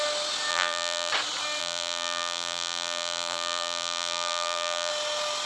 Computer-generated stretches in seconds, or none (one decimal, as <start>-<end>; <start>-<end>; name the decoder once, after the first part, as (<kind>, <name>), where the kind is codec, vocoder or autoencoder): 0.5-1.1 (vocoder, BigVGAN v2); 1.6-4.9